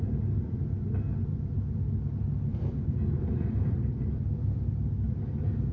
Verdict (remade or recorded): recorded